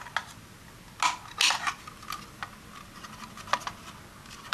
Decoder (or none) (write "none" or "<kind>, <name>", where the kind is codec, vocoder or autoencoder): none